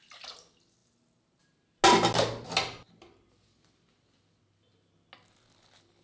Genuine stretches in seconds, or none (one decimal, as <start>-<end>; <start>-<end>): 0.0-6.0